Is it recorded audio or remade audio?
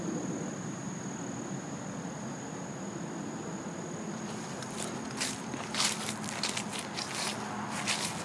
recorded